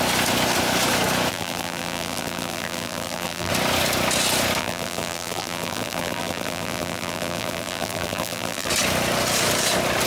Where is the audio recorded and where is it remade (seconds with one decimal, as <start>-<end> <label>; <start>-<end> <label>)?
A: 0.0-1.3 recorded; 1.3-3.5 remade; 3.5-4.6 recorded; 4.6-8.7 remade; 8.7-10.1 recorded